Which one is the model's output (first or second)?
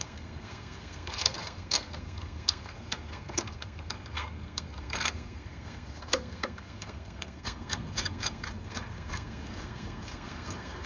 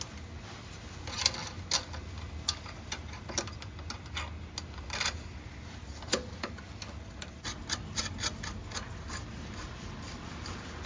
first